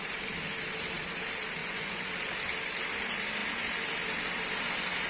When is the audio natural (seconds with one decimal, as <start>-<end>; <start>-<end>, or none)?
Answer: 0.0-1.6; 2.1-5.1